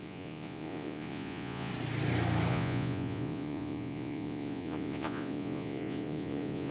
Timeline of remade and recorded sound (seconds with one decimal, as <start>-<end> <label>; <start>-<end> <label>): 0.0-1.7 remade; 1.7-2.5 recorded; 2.5-6.7 remade